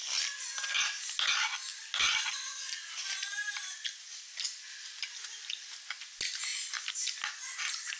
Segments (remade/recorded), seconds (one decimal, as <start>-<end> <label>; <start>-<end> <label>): 0.0-8.0 recorded